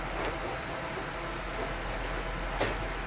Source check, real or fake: real